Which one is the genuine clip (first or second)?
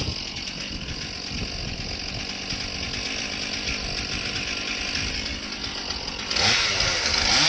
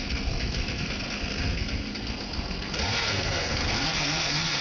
first